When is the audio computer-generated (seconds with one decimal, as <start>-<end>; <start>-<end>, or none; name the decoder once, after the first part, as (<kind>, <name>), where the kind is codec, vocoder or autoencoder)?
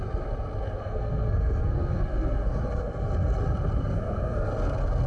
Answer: 0.8-2.5 (codec, SNAC); 3.8-4.5